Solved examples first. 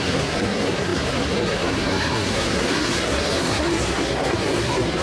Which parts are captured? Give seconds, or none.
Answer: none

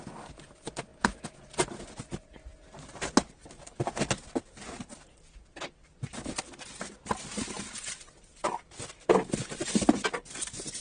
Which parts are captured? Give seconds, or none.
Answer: 0.0-0.9; 2.1-10.8

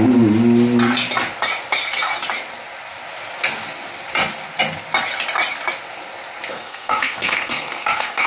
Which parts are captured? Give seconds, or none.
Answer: 0.0-6.5

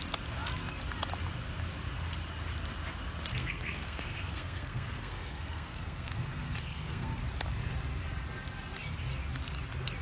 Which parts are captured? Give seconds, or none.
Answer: 0.0-3.3; 7.2-10.0

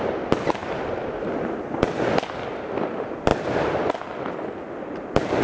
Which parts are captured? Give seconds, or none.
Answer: 0.0-0.6; 1.5-5.4

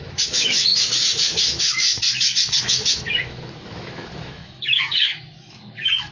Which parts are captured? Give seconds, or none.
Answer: 2.0-2.6

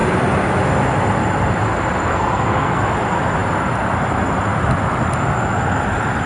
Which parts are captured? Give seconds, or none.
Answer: 0.0-2.1; 2.8-6.3